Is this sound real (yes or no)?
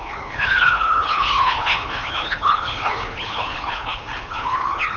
no